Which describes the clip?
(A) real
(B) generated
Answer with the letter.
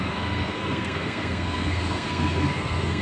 B